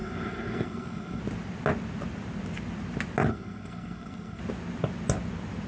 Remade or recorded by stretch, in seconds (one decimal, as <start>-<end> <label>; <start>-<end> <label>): 0.0-1.2 remade; 1.2-3.3 recorded; 3.3-4.4 remade; 4.4-5.7 recorded